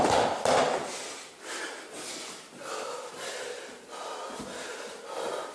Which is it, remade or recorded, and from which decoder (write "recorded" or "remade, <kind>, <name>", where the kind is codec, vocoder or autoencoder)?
recorded